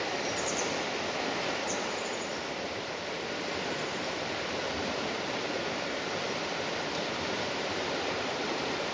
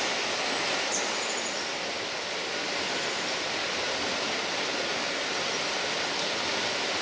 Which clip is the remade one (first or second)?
first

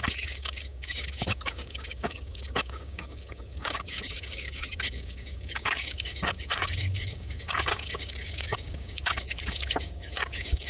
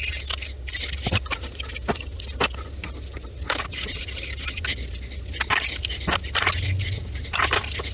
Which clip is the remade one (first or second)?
first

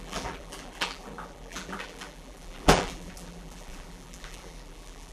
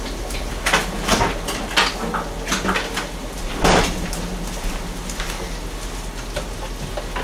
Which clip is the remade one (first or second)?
first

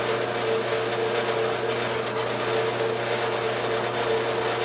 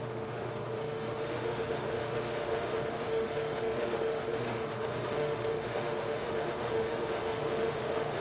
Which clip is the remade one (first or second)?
second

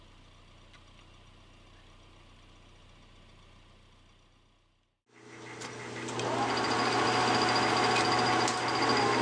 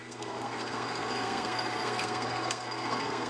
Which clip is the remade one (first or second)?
second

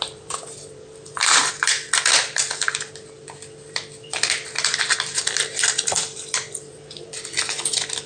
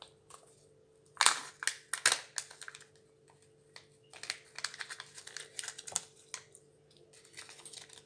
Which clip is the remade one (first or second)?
first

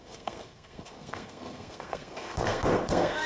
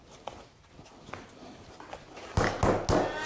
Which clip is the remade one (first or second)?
first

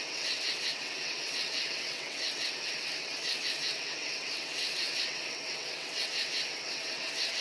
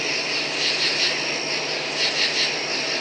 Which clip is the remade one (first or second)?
first